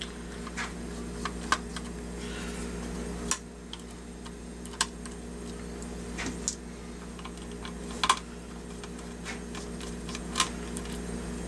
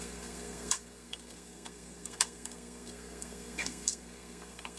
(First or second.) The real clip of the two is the first